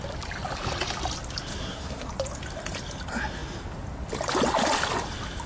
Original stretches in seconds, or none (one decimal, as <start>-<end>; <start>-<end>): 0.0-1.6; 2.1-5.5

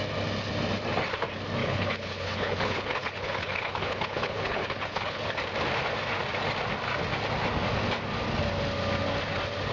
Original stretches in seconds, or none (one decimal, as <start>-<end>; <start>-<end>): 0.0-1.6; 5.2-9.7